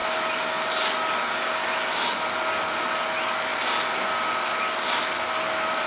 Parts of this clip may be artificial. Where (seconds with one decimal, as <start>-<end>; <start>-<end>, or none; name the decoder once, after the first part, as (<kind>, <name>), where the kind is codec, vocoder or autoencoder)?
none